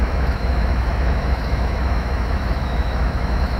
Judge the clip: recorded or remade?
remade